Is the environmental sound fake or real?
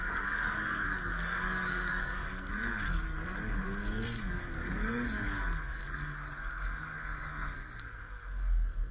fake